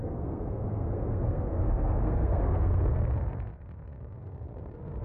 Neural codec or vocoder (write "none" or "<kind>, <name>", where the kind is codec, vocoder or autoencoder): codec, SNAC